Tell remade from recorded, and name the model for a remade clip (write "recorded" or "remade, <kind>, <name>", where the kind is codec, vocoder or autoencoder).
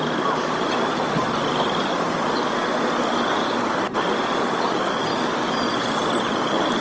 recorded